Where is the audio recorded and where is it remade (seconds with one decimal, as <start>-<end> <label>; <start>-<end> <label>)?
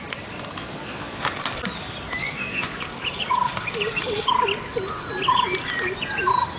0.0-0.6 recorded; 0.6-1.2 remade; 1.2-2.2 recorded; 2.2-2.8 remade; 2.8-6.6 recorded